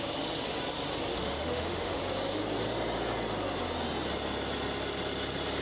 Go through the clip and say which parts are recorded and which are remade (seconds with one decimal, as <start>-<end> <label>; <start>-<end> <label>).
0.0-1.1 recorded; 1.1-2.0 remade; 2.0-5.6 recorded